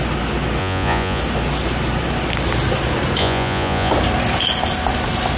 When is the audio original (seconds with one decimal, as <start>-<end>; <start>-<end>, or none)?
0.0-0.6; 1.2-3.2; 3.9-5.4